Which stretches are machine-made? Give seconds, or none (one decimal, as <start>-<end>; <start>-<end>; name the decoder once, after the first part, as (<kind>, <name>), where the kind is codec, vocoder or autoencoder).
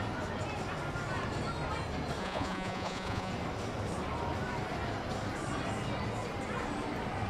2.2-3.3 (vocoder, Vocos)